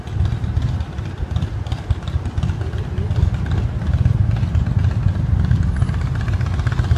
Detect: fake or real real